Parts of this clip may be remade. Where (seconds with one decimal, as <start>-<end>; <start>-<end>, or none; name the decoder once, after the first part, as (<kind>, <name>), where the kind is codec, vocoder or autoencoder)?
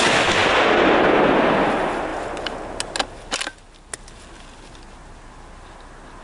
none